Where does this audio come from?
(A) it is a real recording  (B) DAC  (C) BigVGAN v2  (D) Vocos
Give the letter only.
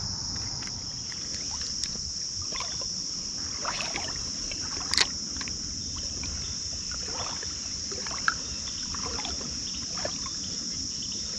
A